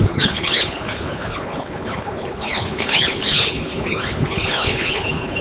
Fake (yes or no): yes